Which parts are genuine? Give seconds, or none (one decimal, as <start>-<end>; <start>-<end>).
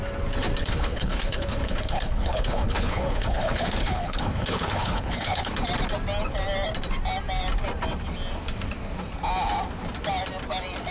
0.0-0.6; 5.5-10.9